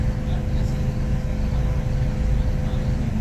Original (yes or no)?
yes